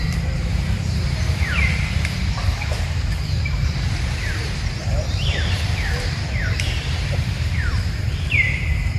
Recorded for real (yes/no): no